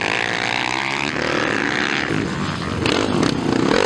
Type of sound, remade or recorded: recorded